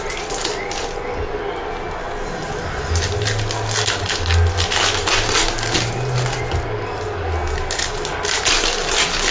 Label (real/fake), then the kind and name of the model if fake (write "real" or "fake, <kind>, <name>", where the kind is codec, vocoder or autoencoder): real